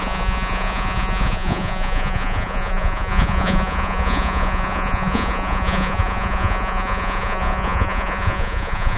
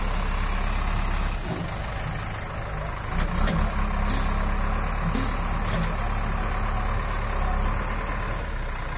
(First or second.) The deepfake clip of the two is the first